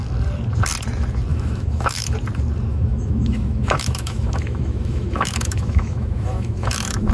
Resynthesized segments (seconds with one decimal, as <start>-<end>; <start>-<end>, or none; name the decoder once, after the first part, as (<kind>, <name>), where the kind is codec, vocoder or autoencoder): 1.3-2.1 (autoencoder, DAC-VAE); 2.7-7.1